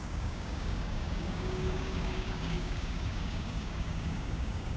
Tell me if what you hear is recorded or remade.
remade